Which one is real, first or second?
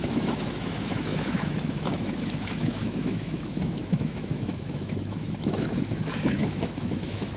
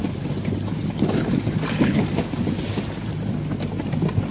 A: second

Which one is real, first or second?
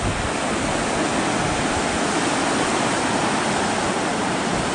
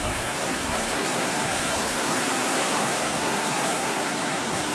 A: first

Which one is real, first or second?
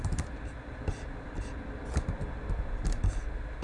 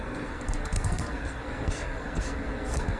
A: first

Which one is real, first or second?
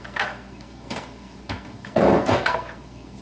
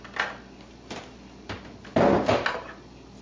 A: second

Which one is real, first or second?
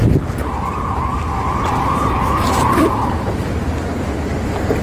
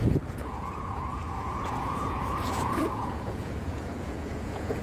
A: first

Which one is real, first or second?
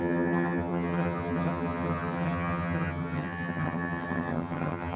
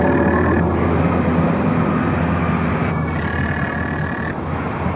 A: second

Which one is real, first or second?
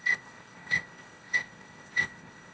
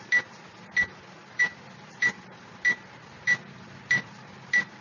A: second